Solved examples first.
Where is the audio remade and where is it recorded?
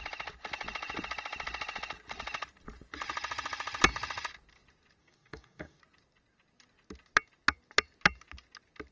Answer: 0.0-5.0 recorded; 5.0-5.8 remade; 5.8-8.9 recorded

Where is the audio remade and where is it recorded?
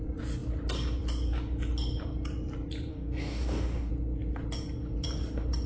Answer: 0.0-2.9 recorded; 2.9-3.9 remade; 3.9-5.7 recorded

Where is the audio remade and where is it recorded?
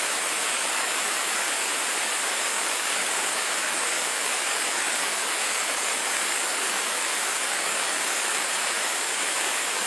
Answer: 0.0-1.7 remade; 1.7-2.3 recorded; 2.3-9.9 remade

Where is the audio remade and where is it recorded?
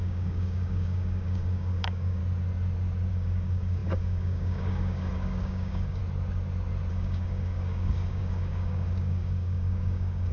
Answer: 0.0-2.2 remade; 2.2-3.1 recorded; 3.1-6.0 remade; 6.0-6.9 recorded; 6.9-10.3 remade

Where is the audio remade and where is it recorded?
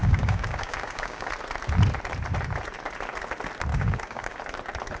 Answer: 0.0-1.3 remade; 1.3-3.7 recorded; 3.7-4.4 remade; 4.4-5.0 recorded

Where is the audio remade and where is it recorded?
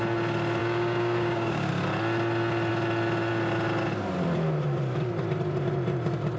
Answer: 0.0-0.6 recorded; 0.6-1.7 remade; 1.7-6.4 recorded